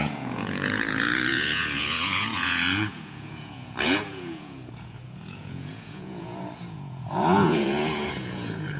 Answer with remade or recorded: remade